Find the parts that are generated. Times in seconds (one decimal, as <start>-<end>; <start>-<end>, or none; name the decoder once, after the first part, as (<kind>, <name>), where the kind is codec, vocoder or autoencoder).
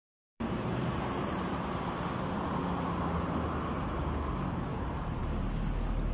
0.0-2.1 (vocoder, BigVGAN v2); 4.7-5.2